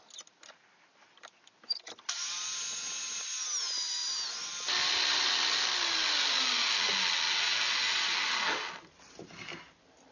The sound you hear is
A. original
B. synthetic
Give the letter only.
A